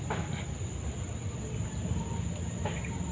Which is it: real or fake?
real